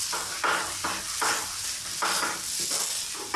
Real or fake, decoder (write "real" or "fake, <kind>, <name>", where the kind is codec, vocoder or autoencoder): real